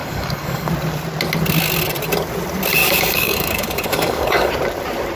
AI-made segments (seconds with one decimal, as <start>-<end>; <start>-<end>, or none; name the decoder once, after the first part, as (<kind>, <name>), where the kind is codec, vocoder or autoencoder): 0.0-0.7 (codec, DAC); 2.8-4.5